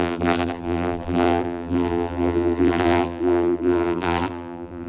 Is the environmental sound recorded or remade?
remade